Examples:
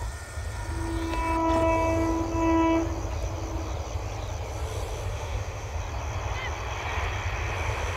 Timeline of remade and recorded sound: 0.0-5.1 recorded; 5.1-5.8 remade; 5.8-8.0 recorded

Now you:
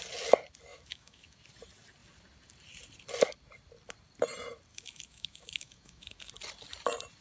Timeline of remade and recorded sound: 0.0-0.7 recorded; 0.7-1.4 remade; 1.4-4.7 recorded; 4.7-6.3 remade; 6.3-7.2 recorded

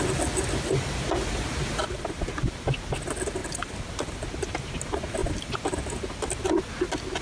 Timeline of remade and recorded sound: 0.0-7.2 recorded

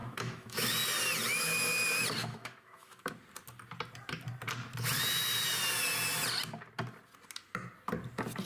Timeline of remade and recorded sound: 0.0-0.7 remade; 0.7-2.2 recorded; 2.2-3.1 remade; 3.1-8.5 recorded

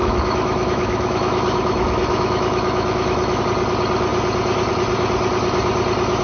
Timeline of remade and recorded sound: 0.0-3.4 remade; 3.4-6.2 recorded